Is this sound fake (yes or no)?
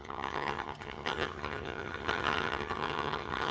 yes